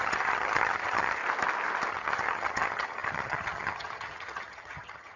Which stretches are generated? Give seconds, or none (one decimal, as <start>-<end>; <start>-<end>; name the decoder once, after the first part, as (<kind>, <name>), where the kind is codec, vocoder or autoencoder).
0.0-1.2 (vocoder, HiFi-GAN); 1.9-5.2